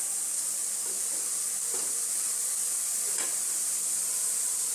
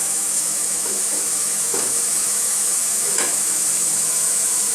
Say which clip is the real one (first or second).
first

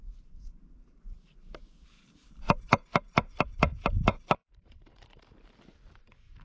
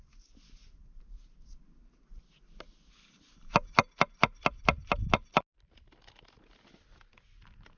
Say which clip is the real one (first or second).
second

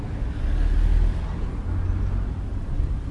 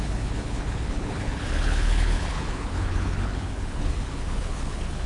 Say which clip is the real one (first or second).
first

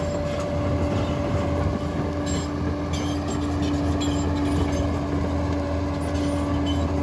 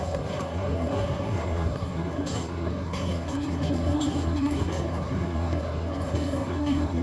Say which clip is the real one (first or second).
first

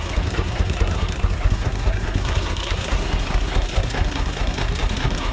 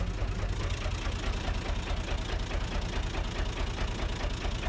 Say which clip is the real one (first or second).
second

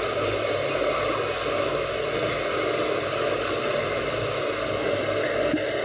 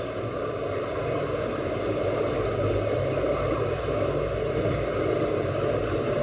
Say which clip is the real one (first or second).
first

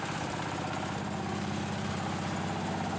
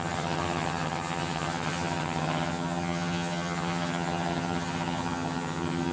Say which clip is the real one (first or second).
first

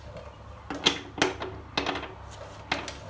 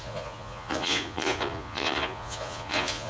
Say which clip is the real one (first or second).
first